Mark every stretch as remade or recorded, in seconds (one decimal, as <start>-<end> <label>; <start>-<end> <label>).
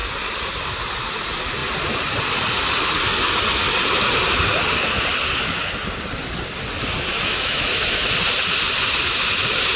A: 0.0-7.2 recorded; 7.2-8.0 remade; 8.0-9.8 recorded